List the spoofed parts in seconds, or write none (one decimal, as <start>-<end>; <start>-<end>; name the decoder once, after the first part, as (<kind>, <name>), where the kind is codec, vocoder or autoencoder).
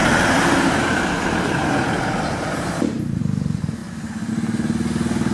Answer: 0.0-3.2 (vocoder, BigVGAN v2)